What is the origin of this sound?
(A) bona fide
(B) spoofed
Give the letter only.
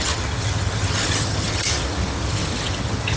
B